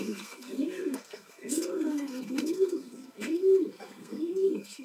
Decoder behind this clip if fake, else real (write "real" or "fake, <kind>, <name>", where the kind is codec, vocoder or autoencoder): fake, codec, SNAC